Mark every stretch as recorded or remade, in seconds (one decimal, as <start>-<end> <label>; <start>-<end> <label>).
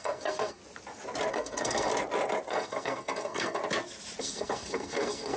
0.0-0.6 remade; 0.6-1.3 recorded; 1.3-1.9 remade; 1.9-2.5 recorded; 2.5-3.6 remade; 3.6-4.2 recorded; 4.2-5.4 remade